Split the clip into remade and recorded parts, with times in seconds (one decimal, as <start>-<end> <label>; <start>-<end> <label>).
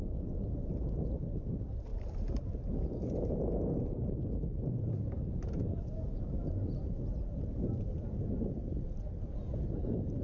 0.0-1.9 recorded; 1.9-6.7 remade; 6.7-10.2 recorded